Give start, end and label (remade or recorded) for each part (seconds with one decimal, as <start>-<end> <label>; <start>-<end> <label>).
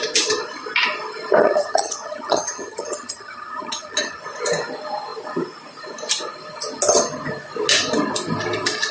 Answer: 0.0-1.4 recorded; 1.4-4.2 remade; 4.2-8.9 recorded